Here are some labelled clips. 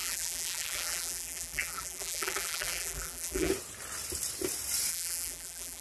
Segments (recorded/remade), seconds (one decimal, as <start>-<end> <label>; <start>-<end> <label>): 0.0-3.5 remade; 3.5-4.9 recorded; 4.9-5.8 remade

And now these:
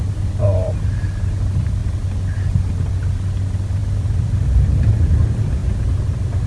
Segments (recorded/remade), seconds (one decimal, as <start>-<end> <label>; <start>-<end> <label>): 0.0-6.5 recorded

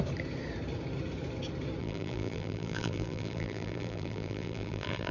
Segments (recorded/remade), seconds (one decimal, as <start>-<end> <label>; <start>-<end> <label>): 0.0-1.8 recorded; 1.8-5.1 remade